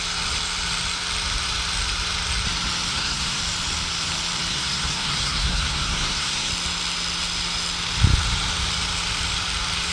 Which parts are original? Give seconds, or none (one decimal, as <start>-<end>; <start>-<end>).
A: 0.0-2.9; 3.4-4.5; 6.5-9.9